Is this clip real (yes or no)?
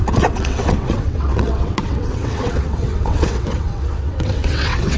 no